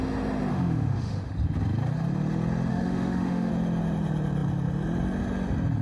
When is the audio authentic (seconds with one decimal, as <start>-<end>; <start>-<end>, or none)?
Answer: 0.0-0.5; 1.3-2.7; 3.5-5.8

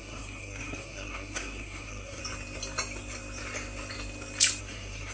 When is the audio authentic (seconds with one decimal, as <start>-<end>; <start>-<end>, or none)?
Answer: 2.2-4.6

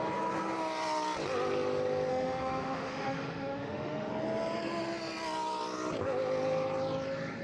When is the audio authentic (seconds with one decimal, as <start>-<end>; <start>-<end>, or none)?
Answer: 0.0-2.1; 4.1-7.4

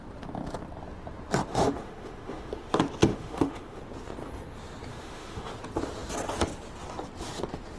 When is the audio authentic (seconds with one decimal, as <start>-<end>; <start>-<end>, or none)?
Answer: 0.0-1.5; 2.7-3.1; 3.8-4.9; 5.5-7.8

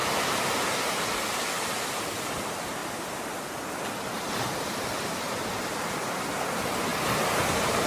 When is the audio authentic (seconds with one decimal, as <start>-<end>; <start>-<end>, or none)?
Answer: 0.0-7.9

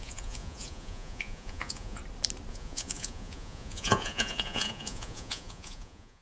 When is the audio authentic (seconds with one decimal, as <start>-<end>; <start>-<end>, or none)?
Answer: 2.0-2.5